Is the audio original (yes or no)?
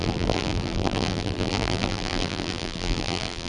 no